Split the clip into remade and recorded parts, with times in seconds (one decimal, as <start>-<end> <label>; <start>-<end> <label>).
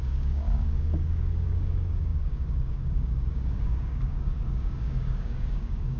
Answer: 0.0-6.0 remade